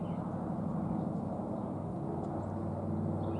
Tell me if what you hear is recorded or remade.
recorded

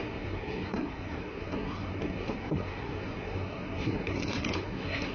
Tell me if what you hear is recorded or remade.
remade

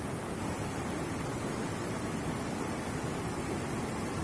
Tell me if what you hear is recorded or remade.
recorded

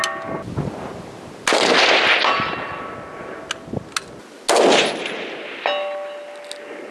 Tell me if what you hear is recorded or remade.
recorded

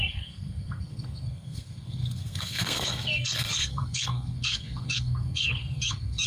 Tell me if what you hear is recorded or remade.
remade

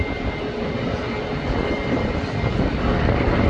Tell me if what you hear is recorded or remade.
recorded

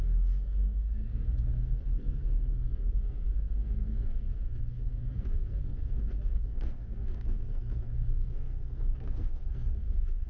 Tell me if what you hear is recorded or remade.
remade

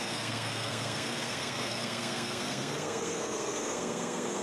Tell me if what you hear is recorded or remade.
remade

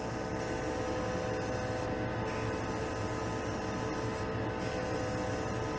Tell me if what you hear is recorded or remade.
recorded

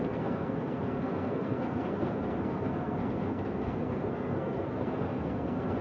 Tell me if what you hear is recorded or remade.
remade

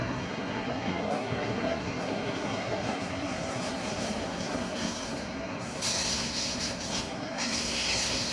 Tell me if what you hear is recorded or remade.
remade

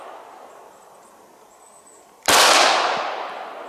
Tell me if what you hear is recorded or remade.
recorded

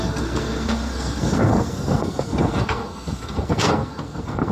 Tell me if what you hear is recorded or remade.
remade